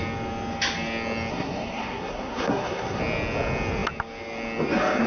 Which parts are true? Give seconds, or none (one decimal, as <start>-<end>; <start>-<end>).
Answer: 0.0-1.3; 3.0-5.1